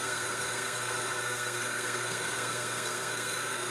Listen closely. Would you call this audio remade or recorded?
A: remade